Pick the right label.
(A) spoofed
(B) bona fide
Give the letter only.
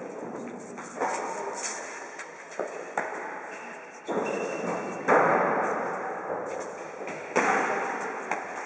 B